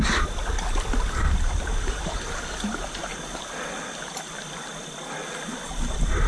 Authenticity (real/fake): real